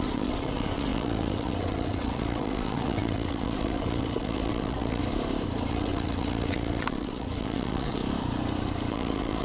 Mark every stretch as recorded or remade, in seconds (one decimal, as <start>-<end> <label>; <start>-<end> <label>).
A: 0.0-5.0 remade; 5.0-5.7 recorded; 5.7-8.0 remade; 8.0-8.9 recorded; 8.9-9.4 remade